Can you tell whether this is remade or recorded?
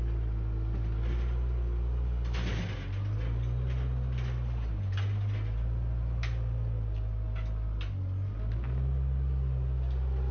recorded